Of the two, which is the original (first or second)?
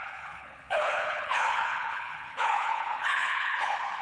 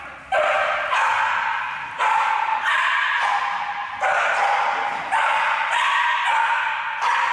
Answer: second